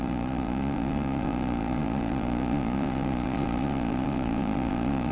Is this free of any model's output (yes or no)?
no